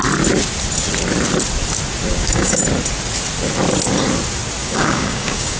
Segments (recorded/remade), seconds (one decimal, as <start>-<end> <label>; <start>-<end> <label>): 0.0-2.1 recorded; 2.1-2.6 remade; 2.6-4.6 recorded; 4.6-5.6 remade